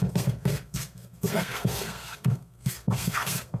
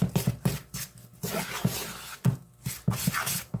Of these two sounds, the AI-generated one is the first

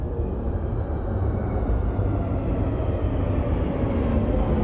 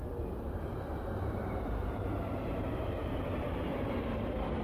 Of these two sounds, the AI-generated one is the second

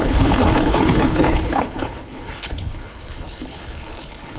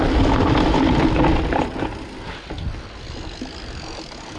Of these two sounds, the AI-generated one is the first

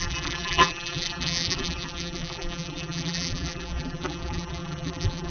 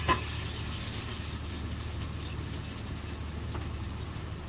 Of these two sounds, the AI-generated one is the first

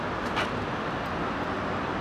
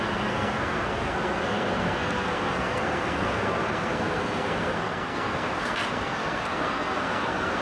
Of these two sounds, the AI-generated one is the second